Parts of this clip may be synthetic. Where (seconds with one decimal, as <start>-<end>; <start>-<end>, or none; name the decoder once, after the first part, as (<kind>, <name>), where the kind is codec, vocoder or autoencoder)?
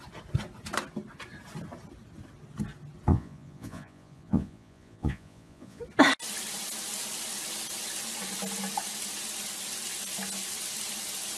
3.1-5.8 (vocoder, Vocos)